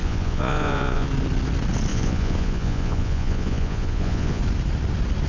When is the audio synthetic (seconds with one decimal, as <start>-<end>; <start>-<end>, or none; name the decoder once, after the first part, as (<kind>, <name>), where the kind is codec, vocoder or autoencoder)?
0.0-1.1 (vocoder, Vocos); 1.9-4.4